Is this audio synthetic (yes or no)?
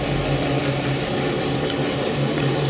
no